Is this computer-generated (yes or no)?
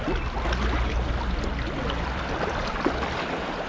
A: no